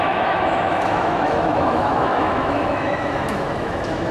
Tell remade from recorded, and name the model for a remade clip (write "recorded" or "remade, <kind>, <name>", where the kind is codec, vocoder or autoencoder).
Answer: remade, autoencoder, DAC-VAE